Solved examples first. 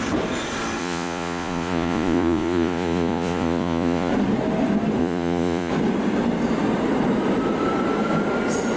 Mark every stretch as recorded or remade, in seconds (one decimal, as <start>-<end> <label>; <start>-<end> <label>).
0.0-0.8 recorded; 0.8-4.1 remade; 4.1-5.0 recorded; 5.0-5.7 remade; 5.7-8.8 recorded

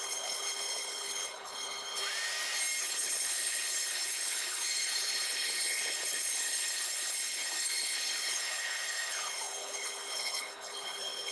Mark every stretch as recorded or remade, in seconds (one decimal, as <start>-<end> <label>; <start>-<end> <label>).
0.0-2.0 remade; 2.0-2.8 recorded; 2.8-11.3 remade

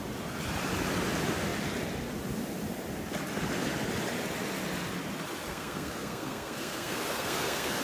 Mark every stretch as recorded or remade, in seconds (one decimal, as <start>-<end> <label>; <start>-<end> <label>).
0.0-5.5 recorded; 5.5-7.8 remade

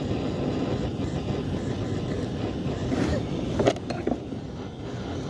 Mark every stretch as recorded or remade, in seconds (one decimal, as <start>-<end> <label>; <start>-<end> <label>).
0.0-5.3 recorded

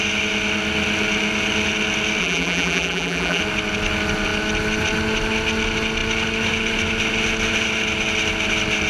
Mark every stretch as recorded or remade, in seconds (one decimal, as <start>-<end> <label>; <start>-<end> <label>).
0.0-2.2 recorded; 2.2-3.4 remade; 3.4-8.9 recorded

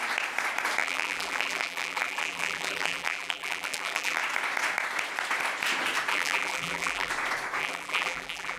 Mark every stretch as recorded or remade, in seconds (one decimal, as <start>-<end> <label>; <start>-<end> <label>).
0.0-0.8 recorded; 0.8-4.2 remade; 4.2-6.1 recorded; 6.1-7.1 remade; 7.1-7.6 recorded; 7.6-8.6 remade

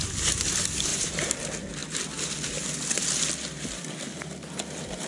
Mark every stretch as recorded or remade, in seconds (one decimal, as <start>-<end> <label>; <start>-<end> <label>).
0.0-0.9 recorded; 0.9-1.4 remade; 1.4-5.1 recorded

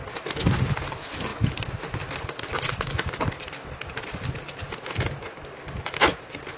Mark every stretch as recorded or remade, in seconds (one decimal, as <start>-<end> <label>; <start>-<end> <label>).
0.0-6.6 recorded